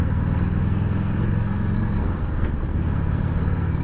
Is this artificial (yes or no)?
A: yes